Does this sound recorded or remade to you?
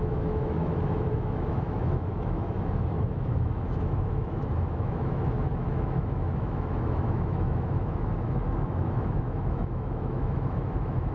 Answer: remade